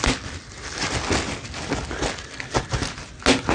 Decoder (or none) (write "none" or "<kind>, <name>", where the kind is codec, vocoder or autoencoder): none